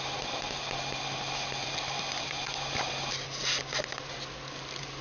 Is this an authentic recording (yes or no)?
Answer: yes